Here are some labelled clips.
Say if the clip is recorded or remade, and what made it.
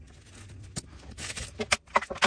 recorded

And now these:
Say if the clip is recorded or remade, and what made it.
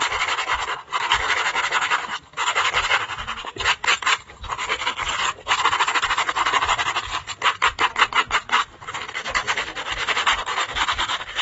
recorded